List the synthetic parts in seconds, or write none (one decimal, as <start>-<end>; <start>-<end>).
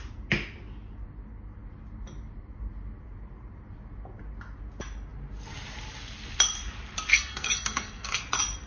7.1-8.2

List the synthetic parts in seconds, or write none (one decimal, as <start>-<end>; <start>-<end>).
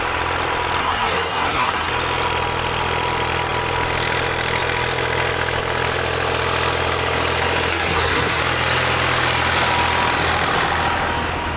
0.8-1.9; 7.7-8.4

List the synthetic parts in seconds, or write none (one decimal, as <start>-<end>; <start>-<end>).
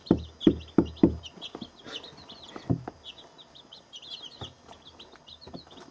none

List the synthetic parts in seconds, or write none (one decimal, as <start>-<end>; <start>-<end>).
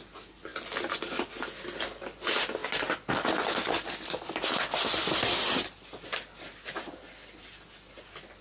none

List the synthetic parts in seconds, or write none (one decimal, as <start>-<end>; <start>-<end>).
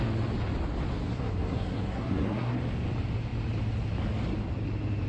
1.1-2.6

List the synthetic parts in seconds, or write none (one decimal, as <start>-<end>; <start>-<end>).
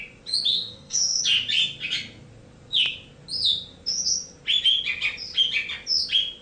0.5-1.2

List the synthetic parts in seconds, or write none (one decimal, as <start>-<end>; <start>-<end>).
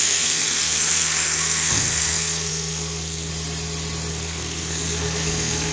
0.0-3.3; 4.1-5.7